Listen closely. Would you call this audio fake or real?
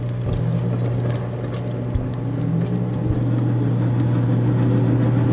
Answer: real